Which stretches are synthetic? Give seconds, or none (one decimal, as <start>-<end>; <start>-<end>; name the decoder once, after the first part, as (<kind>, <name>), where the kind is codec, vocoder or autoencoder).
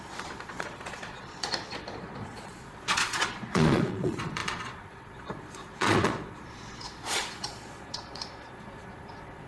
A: 0.0-9.5 (vocoder, Vocos)